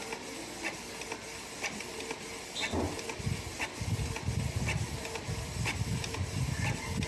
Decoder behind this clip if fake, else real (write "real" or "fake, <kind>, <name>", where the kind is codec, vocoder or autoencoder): real